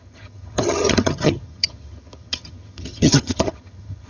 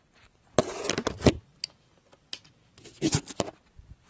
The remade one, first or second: first